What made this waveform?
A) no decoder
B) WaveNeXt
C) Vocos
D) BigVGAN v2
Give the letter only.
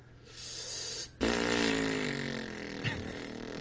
A